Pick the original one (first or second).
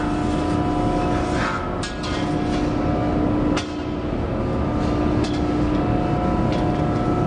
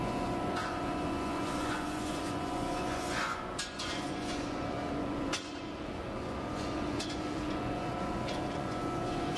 first